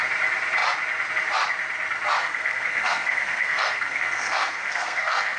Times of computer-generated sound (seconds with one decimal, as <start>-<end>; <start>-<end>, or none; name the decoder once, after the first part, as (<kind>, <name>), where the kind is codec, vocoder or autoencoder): 2.2-5.4 (codec, SNAC)